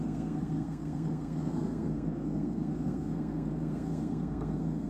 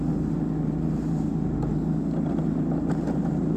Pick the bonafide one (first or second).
second